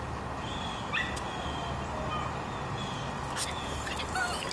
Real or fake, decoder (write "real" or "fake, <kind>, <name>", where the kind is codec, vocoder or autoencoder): real